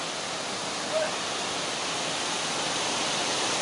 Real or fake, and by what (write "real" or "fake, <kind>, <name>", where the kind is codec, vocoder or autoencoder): real